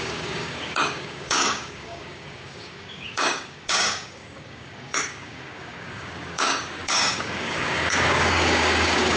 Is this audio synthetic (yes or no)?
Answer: yes